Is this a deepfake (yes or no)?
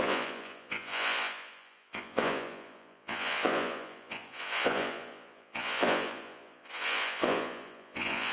yes